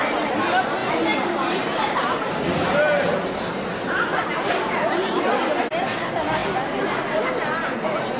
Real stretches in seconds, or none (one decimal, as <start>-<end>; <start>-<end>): 0.0-0.8; 5.2-8.2